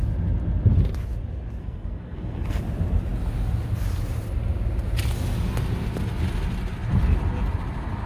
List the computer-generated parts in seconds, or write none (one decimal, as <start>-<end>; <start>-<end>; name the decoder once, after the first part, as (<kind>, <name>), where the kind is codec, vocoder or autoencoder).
1.6-2.6 (codec, SNAC)